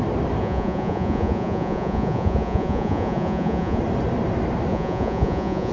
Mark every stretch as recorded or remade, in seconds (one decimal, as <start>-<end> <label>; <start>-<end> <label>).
0.0-0.4 recorded; 0.4-3.8 remade; 3.8-4.7 recorded; 4.7-5.7 remade